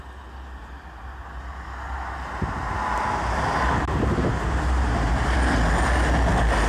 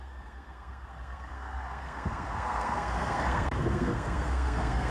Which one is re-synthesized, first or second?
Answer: second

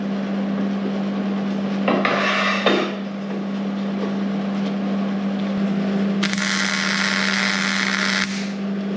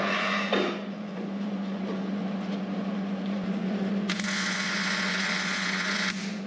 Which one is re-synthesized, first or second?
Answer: second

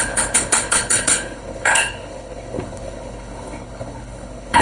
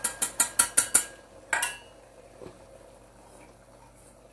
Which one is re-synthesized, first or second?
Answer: first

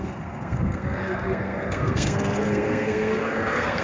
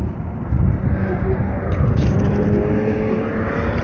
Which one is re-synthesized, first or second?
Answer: first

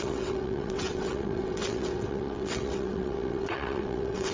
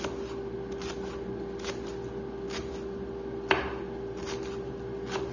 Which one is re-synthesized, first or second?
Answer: first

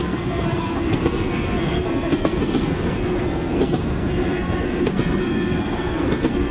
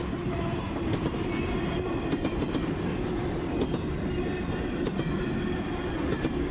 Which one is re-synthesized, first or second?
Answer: first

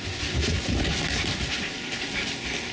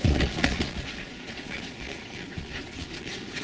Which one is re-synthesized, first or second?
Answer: second